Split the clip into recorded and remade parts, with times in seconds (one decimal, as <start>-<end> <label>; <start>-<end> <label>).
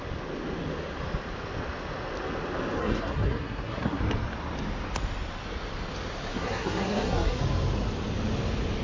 0.0-2.8 recorded; 2.8-4.0 remade; 4.0-6.3 recorded; 6.3-7.4 remade; 7.4-8.8 recorded